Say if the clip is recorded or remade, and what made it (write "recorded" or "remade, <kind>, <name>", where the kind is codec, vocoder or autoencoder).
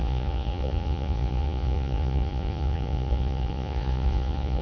remade, vocoder, Vocos